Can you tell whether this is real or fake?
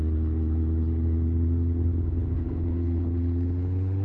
fake